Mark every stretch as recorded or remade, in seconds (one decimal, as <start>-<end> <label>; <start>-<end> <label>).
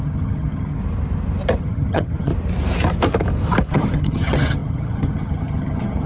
0.0-0.8 remade; 0.8-1.6 recorded; 1.6-2.3 remade; 2.3-3.7 recorded; 3.7-6.1 remade